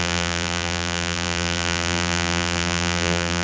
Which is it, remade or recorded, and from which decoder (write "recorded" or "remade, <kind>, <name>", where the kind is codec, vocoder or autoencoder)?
remade, vocoder, BigVGAN v2